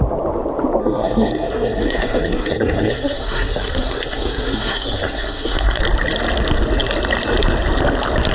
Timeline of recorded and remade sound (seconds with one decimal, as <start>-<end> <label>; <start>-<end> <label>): 0.0-0.8 recorded; 0.8-5.8 remade; 5.8-8.3 recorded